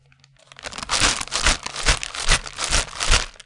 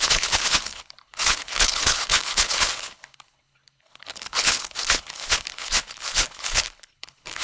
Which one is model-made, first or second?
second